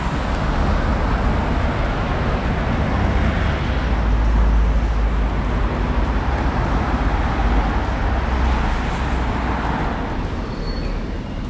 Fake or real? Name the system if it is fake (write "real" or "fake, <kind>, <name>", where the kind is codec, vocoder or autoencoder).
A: real